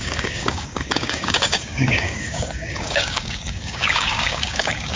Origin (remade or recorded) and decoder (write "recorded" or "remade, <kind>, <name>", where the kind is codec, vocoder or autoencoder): remade, codec, DAC